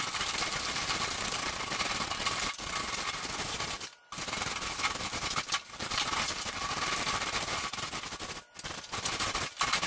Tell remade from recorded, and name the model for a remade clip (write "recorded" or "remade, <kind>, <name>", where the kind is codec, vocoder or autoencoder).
recorded